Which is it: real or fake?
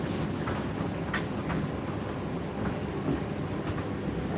real